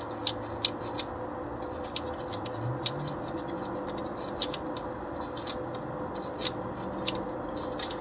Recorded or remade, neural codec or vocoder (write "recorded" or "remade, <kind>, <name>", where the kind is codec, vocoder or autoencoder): recorded